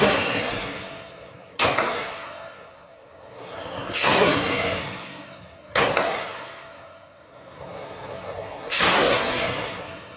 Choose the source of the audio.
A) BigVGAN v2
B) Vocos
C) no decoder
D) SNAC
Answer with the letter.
D